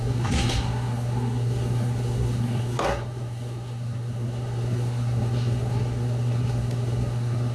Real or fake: fake